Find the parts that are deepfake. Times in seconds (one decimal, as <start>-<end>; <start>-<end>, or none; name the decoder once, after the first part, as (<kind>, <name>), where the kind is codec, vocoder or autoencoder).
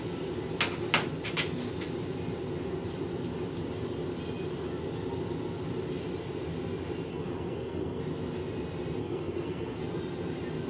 7.1-8.0 (codec, SNAC); 9.0-9.8